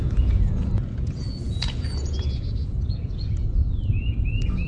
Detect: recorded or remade remade